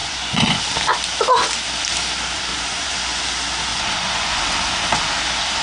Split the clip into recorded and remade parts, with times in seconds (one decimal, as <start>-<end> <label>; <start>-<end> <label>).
0.0-0.6 remade; 0.6-2.5 recorded; 2.5-3.2 remade; 3.2-3.7 recorded; 3.7-4.4 remade; 4.4-5.6 recorded